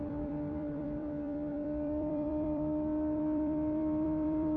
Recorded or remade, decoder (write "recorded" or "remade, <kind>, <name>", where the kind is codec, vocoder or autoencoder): remade, vocoder, BigVGAN v2